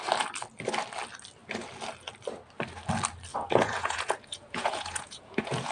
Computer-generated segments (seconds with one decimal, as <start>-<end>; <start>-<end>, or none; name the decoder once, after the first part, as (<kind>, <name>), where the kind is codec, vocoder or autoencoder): 3.3-5.7 (vocoder, Vocos)